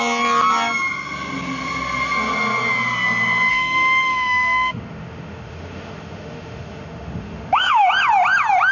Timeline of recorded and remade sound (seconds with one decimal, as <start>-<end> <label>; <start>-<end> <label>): 0.0-3.5 recorded; 3.5-7.9 remade; 7.9-8.7 recorded